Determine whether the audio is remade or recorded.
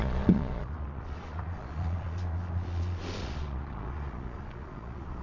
remade